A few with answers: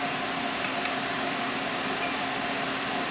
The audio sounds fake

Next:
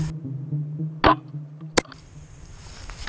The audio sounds real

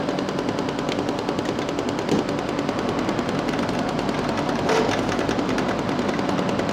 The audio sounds real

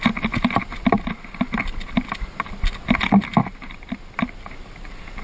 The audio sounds real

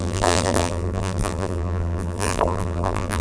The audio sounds fake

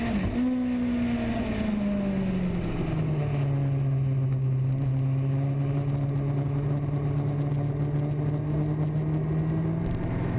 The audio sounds real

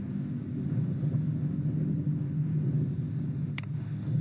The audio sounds real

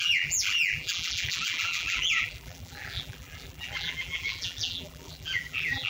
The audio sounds fake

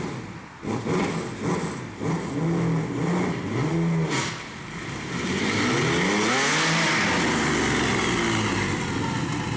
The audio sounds real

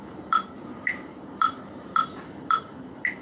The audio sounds fake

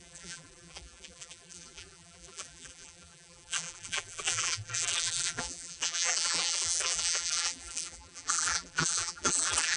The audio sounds fake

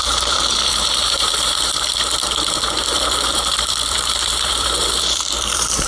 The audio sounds fake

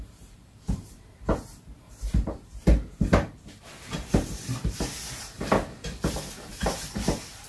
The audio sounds fake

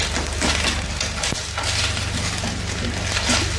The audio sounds real